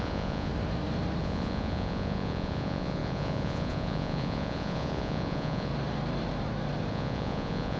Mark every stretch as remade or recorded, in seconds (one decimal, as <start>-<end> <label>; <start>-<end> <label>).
0.0-0.5 remade; 0.5-1.2 recorded; 1.2-5.7 remade; 5.7-6.9 recorded; 6.9-7.8 remade